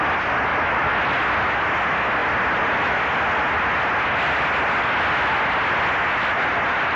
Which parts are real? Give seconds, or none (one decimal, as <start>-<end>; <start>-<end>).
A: 0.0-0.5; 1.0-7.0